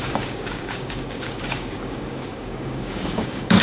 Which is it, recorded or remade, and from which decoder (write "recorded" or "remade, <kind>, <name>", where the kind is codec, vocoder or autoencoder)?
remade, codec, DAC